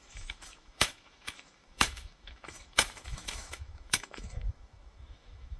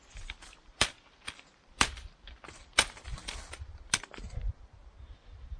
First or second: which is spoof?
first